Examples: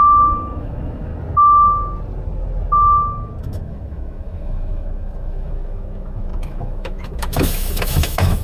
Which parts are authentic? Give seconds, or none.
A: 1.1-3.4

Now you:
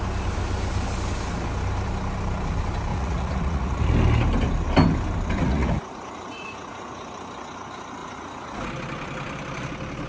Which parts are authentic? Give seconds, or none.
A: 0.0-2.9; 3.9-5.4; 7.0-8.0; 8.7-10.1

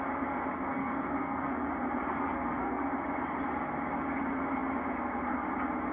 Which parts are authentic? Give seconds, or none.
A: 0.0-0.7; 1.7-2.2; 2.8-5.9

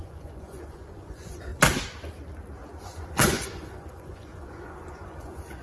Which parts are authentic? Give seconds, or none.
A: 1.5-2.8

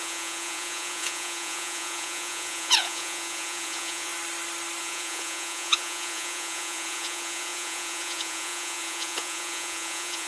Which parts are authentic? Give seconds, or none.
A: 4.1-4.8

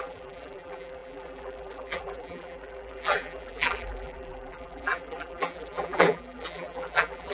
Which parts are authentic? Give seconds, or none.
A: none

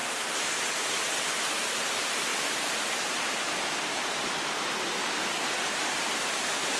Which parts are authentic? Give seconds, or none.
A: 0.0-6.8

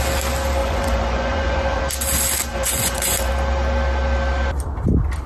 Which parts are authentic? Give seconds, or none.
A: 0.0-0.6; 1.8-2.5; 3.3-5.3